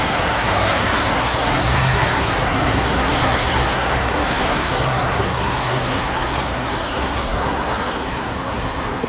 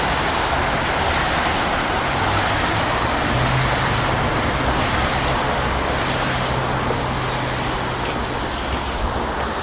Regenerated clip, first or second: first